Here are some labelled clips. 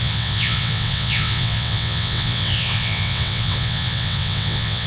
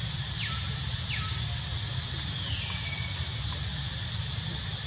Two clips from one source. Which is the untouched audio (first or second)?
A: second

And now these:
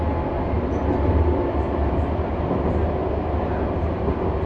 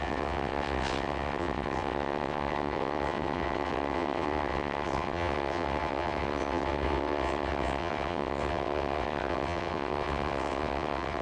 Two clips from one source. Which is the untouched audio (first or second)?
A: first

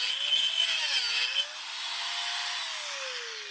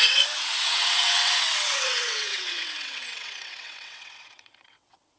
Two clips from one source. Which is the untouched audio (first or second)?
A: first